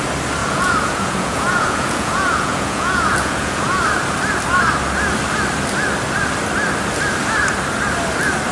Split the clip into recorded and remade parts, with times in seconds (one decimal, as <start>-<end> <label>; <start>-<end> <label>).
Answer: 0.0-0.4 recorded; 0.4-3.8 remade; 3.8-8.5 recorded